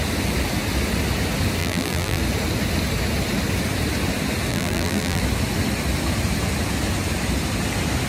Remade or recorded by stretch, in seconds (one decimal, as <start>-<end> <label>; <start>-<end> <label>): 0.0-1.6 recorded; 1.6-2.2 remade; 2.2-4.5 recorded; 4.5-5.2 remade; 5.2-8.1 recorded